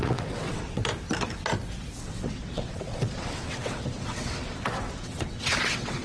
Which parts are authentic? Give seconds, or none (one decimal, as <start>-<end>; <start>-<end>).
0.8-2.0